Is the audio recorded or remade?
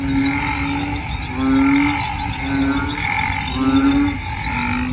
recorded